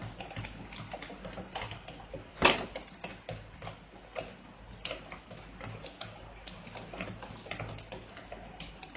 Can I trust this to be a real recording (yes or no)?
yes